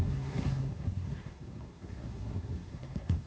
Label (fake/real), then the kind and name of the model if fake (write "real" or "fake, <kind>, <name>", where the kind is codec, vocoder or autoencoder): fake, codec, SNAC